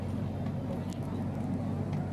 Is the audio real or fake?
real